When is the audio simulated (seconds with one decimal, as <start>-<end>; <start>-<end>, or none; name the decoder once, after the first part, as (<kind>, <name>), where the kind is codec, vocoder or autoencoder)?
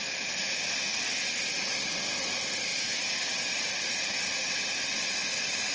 2.7-3.7 (vocoder, BigVGAN v2)